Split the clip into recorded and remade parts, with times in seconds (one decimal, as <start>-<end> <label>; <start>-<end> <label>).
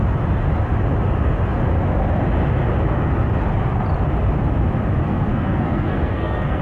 0.0-5.0 recorded; 5.0-6.6 remade